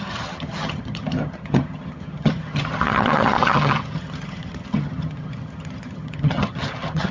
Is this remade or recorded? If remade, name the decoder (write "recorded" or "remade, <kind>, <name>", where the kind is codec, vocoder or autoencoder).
remade, vocoder, HiFi-GAN